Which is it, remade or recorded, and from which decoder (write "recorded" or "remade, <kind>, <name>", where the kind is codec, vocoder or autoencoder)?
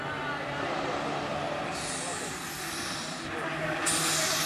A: recorded